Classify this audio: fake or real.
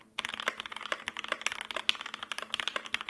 real